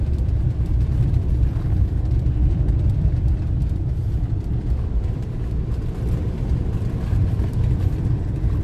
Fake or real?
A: fake